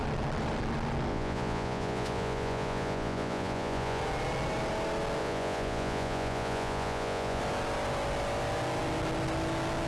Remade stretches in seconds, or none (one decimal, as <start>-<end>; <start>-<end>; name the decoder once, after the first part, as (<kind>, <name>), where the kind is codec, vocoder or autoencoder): 1.1-4.0 (vocoder, Vocos); 5.2-7.4